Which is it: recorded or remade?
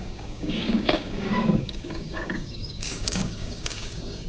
remade